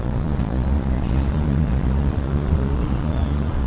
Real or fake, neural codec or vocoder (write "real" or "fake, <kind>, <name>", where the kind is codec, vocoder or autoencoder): fake, vocoder, Vocos